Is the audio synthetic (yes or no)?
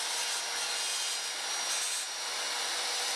no